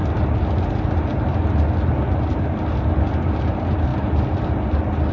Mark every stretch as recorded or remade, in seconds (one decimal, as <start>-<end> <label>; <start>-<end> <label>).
0.0-5.1 recorded

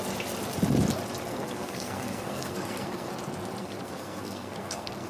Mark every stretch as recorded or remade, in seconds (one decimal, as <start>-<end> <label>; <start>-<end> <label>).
0.0-1.3 recorded; 1.3-3.1 remade; 3.1-3.6 recorded; 3.6-5.1 remade

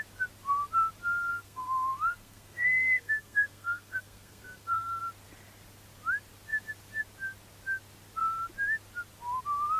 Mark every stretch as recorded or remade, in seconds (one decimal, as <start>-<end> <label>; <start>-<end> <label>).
0.0-1.3 recorded; 1.3-5.0 remade; 5.0-9.8 recorded

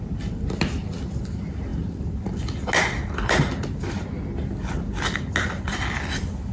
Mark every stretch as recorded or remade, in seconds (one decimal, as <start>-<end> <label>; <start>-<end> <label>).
0.0-6.5 recorded

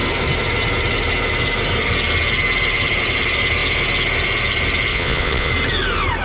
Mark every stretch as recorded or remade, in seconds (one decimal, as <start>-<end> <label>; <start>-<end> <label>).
0.0-4.9 recorded; 4.9-5.5 remade; 5.5-6.2 recorded